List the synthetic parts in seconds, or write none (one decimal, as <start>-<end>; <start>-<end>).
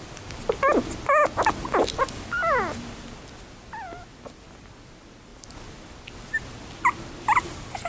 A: none